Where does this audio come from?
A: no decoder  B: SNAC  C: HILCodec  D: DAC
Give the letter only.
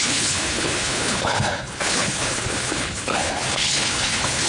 C